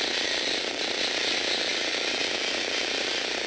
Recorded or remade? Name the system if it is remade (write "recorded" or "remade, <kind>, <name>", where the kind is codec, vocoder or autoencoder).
recorded